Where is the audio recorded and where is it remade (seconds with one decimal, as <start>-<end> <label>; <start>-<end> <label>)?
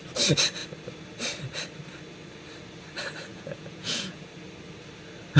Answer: 0.0-3.3 recorded; 3.3-4.2 remade; 4.2-5.4 recorded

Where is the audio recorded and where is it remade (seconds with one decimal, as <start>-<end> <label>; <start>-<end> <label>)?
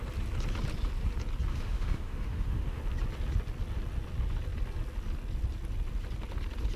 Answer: 0.0-1.5 recorded; 1.5-2.8 remade; 2.8-6.8 recorded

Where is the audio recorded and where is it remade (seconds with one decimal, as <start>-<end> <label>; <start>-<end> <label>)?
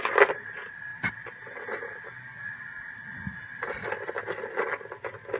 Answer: 0.0-5.4 recorded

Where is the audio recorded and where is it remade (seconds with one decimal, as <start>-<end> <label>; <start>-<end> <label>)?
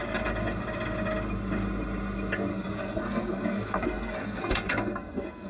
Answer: 0.0-2.5 recorded; 2.5-5.5 remade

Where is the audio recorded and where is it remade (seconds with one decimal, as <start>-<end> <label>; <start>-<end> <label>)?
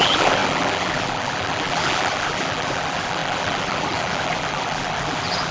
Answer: 0.0-5.5 remade